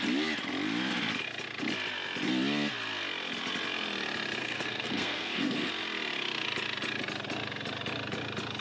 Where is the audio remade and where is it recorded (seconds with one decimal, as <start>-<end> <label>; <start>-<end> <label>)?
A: 0.0-4.4 recorded; 4.4-5.7 remade; 5.7-8.6 recorded